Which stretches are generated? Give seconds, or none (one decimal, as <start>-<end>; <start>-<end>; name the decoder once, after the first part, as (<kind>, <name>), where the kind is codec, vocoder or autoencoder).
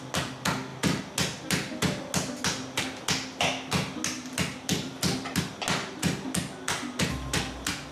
4.7-5.5 (vocoder, BigVGAN v2)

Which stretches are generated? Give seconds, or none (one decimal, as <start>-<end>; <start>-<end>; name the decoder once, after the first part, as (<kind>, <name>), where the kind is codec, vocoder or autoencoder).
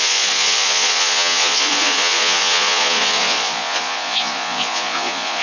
0.0-5.4 (vocoder, Vocos)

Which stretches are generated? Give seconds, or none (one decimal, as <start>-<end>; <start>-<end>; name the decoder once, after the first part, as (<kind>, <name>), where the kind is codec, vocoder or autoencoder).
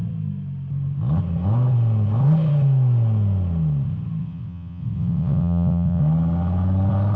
4.2-6.0 (vocoder, WaveNeXt)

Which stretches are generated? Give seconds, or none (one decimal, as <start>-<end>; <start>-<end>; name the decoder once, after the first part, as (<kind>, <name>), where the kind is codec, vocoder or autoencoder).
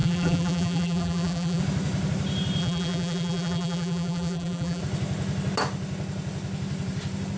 0.0-1.6 (vocoder, BigVGAN v2); 2.6-4.8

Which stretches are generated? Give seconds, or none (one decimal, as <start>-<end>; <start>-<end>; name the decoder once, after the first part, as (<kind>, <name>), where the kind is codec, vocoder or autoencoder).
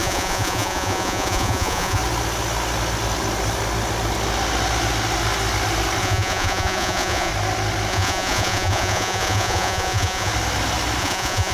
0.0-2.0 (vocoder, Vocos); 6.0-7.3; 7.9-10.3; 11.0-11.5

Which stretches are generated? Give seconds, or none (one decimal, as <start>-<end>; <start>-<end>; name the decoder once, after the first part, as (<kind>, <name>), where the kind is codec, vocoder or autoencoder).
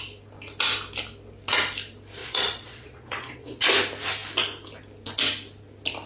2.2-3.6 (vocoder, Vocos)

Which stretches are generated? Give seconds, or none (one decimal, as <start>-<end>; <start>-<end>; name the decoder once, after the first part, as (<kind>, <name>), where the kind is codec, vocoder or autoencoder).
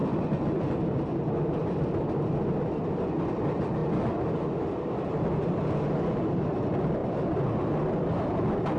none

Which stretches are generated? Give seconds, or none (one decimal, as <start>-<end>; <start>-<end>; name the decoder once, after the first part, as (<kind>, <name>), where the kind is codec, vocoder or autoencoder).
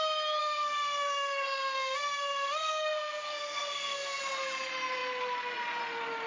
0.4-4.2 (codec, SNAC)